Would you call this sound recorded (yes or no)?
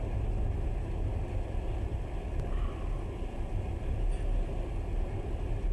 yes